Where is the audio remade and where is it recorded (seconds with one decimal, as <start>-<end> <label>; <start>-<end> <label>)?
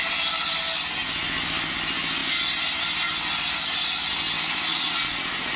0.0-4.7 recorded; 4.7-5.6 remade